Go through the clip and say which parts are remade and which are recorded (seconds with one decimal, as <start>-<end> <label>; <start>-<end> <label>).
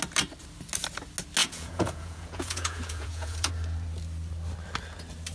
0.0-1.4 recorded; 1.4-3.5 remade; 3.5-5.3 recorded